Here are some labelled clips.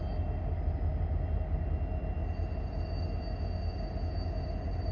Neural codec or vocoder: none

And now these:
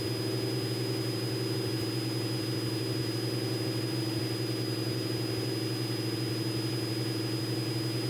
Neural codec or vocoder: none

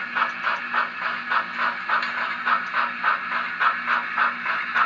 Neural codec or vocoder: none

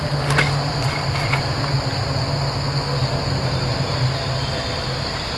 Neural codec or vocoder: none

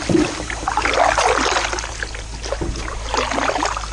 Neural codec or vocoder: none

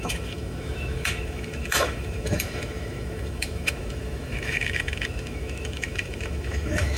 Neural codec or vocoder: autoencoder, DAC-VAE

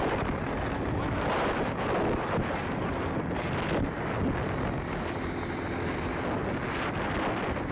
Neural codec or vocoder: none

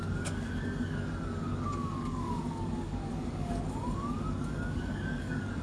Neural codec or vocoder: codec, DAC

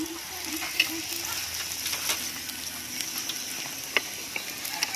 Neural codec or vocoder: none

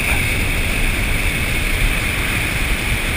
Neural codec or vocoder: vocoder, BigVGAN v2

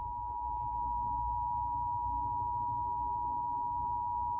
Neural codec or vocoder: none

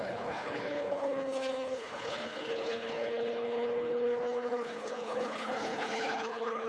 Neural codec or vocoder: codec, HILCodec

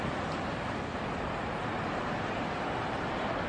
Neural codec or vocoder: none